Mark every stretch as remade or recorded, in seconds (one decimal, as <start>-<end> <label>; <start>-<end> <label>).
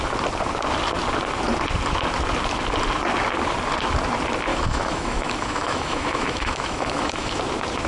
0.0-4.5 recorded; 4.5-7.4 remade; 7.4-7.9 recorded